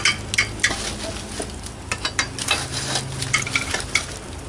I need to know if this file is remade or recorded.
recorded